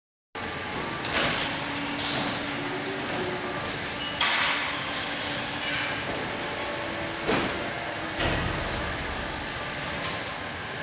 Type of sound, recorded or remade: recorded